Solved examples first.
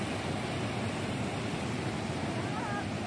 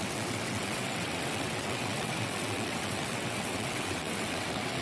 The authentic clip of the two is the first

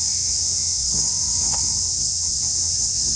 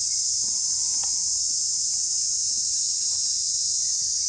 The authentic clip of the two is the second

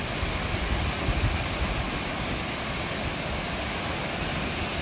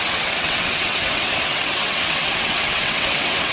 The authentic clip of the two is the first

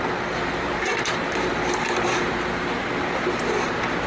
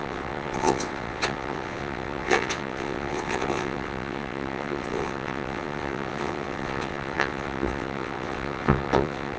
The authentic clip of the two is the first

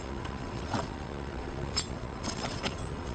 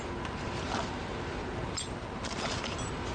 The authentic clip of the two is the second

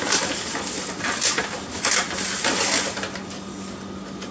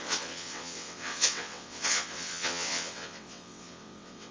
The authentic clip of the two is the first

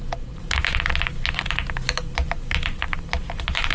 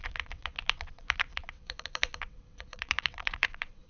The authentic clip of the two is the first